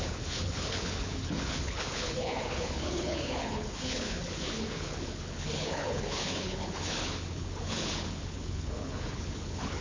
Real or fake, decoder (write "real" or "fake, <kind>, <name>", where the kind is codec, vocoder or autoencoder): fake, codec, HILCodec